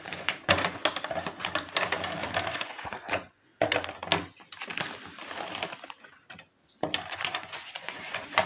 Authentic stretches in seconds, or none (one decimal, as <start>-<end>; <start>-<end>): 0.8-2.5; 3.5-7.1

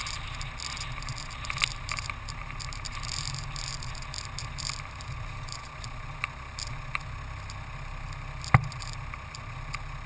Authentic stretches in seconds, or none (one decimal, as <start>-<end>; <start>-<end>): 0.0-10.1

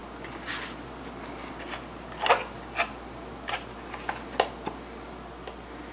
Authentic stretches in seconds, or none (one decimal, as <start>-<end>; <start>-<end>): 0.0-5.9

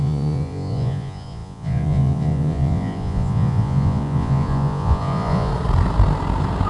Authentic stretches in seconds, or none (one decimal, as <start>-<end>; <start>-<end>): 5.5-6.7